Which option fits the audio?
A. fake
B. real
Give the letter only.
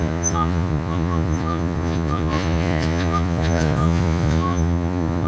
A